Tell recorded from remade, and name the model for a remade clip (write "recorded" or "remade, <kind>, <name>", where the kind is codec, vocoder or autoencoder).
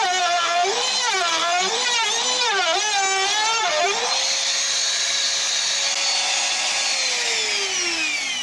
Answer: recorded